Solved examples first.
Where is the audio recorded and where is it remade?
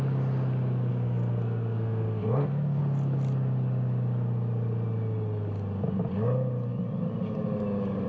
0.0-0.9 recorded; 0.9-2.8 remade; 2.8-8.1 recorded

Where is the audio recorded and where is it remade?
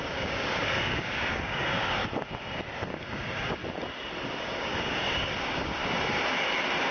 0.0-2.0 remade; 2.0-2.8 recorded; 2.8-3.6 remade; 3.6-4.4 recorded; 4.4-5.8 remade; 5.8-6.9 recorded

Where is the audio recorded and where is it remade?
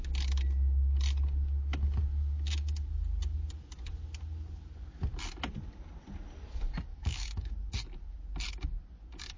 0.0-6.9 recorded; 6.9-7.5 remade; 7.5-9.4 recorded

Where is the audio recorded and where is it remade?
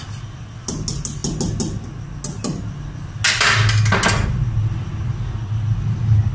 0.0-6.3 recorded